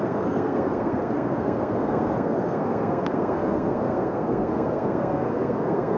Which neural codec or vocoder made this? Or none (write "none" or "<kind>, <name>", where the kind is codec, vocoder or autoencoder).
codec, SNAC